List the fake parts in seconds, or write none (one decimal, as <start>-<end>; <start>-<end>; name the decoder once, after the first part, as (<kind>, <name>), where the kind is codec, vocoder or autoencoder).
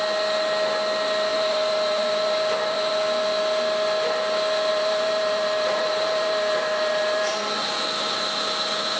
1.3-2.9 (vocoder, BigVGAN v2); 4.7-7.4